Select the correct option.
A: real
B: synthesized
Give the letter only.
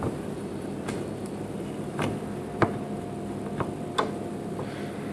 A